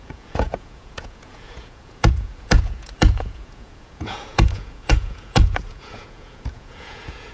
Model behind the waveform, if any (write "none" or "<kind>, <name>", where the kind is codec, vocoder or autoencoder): vocoder, Vocos